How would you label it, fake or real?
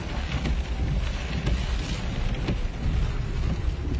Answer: real